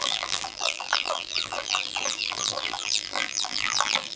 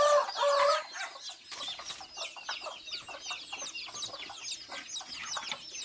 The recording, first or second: second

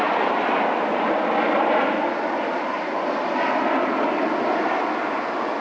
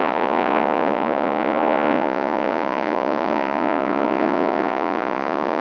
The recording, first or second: first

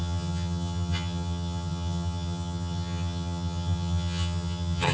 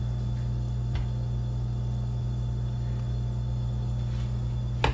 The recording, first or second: second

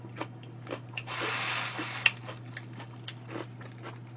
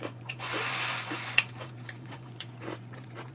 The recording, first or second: first